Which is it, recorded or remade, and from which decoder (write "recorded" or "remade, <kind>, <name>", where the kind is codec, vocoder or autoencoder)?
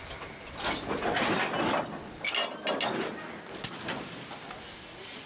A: recorded